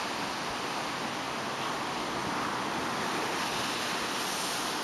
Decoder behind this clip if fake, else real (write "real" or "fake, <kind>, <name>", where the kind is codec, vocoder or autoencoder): real